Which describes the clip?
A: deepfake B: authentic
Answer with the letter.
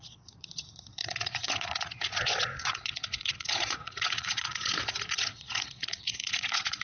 A